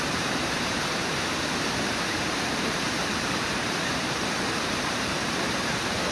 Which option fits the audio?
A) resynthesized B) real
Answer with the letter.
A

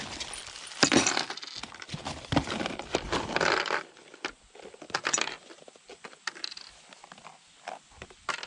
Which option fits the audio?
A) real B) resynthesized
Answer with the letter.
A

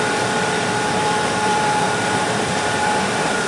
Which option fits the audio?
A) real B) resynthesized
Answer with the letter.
B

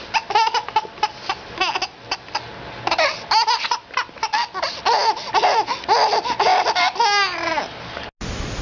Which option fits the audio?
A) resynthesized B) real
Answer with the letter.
B